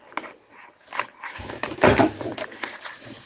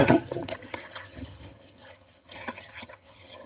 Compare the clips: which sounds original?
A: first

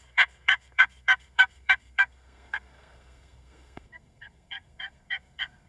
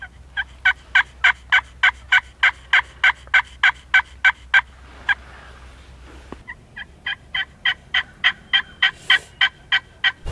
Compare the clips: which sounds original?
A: second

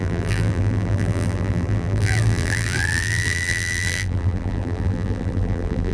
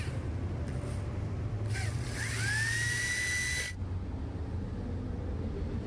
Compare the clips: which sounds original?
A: second